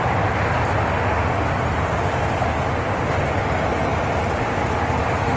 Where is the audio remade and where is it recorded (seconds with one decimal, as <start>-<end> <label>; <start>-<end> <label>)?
0.0-5.4 recorded